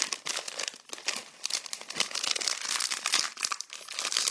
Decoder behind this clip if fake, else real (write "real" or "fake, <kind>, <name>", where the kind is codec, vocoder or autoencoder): real